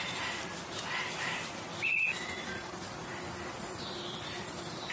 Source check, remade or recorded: recorded